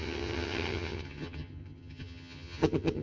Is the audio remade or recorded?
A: remade